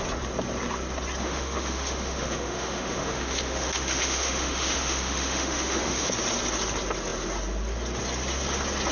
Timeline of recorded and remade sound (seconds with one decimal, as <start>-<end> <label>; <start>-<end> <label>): 0.0-1.2 recorded; 1.2-6.1 remade; 6.1-8.9 recorded

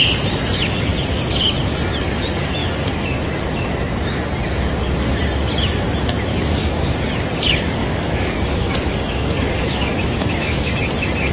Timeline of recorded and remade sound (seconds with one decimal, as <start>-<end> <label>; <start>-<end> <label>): 0.0-6.3 recorded; 6.3-6.9 remade; 6.9-7.8 recorded; 7.8-10.7 remade; 10.7-11.3 recorded

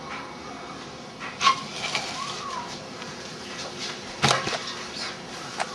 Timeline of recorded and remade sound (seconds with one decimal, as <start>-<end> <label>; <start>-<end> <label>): 0.0-5.7 recorded

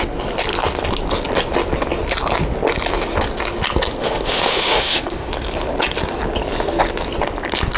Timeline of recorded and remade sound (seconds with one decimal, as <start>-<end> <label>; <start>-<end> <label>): 0.0-4.0 recorded; 4.0-5.3 remade; 5.3-7.8 recorded